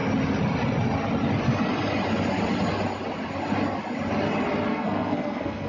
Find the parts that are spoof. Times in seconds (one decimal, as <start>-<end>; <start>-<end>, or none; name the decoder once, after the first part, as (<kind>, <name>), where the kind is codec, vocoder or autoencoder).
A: 4.7-5.7 (codec, SNAC)

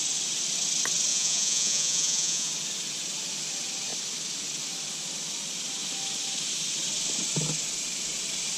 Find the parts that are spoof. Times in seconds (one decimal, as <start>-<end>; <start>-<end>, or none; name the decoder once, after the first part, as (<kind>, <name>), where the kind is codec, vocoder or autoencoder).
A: 1.1-2.5 (vocoder, Vocos)

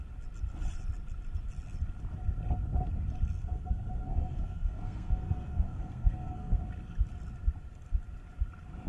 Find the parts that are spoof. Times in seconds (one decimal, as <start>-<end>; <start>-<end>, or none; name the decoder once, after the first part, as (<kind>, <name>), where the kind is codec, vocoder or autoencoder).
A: 3.4-6.6 (codec, SNAC)

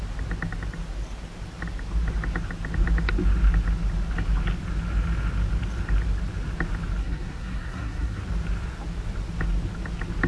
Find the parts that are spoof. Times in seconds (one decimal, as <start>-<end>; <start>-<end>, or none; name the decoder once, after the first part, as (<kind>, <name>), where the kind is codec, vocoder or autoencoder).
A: 7.0-8.2 (codec, SNAC)

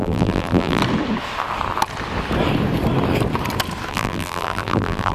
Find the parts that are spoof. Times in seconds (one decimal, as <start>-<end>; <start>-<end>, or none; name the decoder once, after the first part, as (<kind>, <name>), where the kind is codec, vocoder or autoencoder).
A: 0.0-0.8 (vocoder, BigVGAN v2); 3.9-5.1